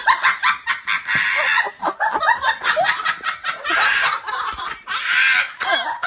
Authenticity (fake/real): real